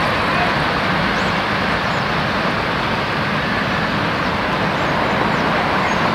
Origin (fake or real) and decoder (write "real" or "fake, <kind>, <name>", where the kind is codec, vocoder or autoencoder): real